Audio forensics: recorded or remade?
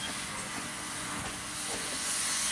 remade